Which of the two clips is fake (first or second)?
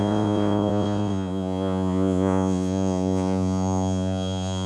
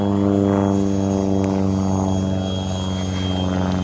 first